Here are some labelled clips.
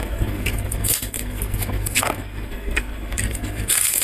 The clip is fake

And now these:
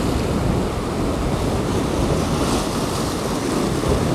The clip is real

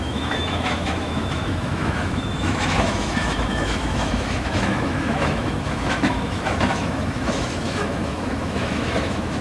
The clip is fake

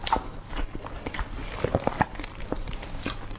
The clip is real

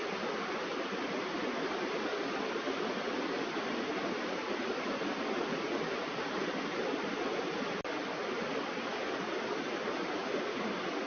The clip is real